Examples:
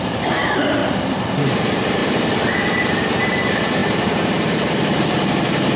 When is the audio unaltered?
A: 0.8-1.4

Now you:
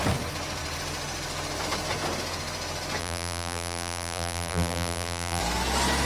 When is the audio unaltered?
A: 0.0-3.0; 5.4-6.1